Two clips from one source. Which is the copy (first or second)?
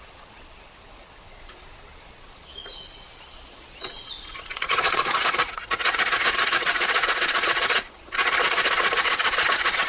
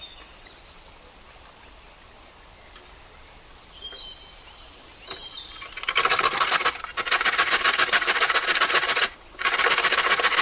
first